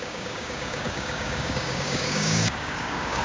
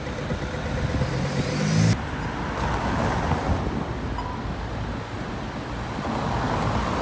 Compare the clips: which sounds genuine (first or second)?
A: second